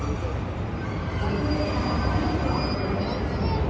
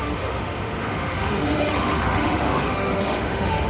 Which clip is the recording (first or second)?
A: first